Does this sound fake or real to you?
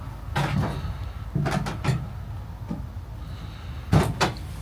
real